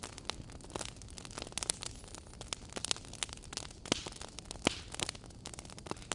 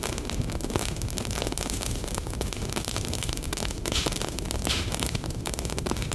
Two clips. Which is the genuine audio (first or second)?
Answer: first